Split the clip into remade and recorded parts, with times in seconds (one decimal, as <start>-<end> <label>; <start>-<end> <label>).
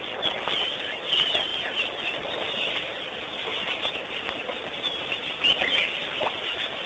0.0-6.9 recorded